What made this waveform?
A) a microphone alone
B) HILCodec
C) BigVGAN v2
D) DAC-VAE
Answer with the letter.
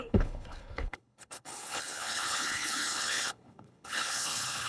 B